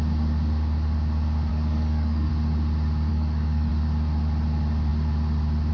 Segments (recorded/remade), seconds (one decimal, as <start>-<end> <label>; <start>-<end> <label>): 0.0-1.5 recorded; 1.5-2.3 remade; 2.3-3.1 recorded; 3.1-3.7 remade; 3.7-5.7 recorded